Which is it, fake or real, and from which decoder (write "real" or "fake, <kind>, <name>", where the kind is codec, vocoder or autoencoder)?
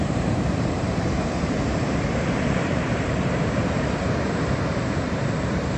fake, vocoder, BigVGAN v2